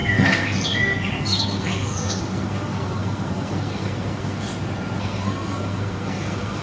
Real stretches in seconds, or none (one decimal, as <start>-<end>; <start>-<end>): 4.5-5.0